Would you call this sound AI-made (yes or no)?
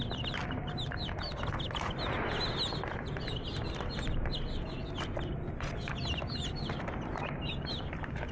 no